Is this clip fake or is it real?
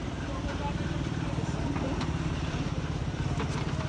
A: fake